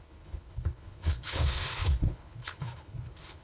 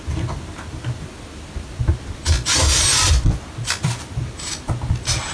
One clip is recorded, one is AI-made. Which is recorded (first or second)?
second